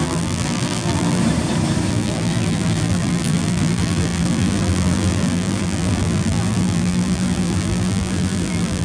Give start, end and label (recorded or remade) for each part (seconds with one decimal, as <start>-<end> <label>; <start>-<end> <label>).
0.0-1.2 remade; 1.2-1.9 recorded; 1.9-8.8 remade